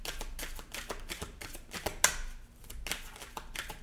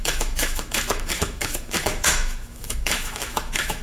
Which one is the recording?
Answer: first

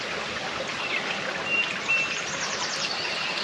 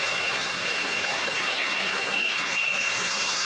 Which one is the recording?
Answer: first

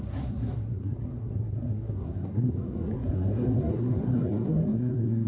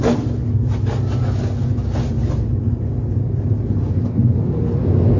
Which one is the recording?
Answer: second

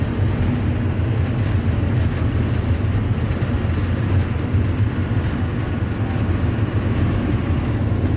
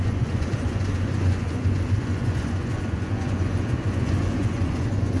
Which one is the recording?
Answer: first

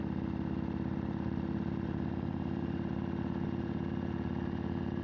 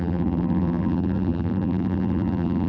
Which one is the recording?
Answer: first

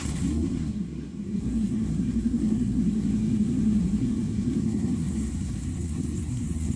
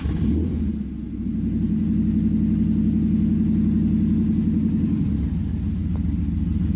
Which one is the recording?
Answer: second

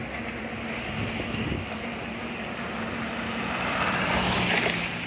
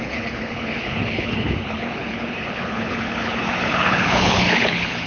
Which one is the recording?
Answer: first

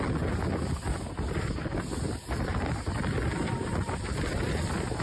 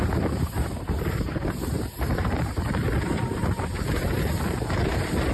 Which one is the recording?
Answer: first